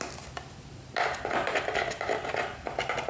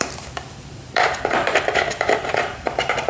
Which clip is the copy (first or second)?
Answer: second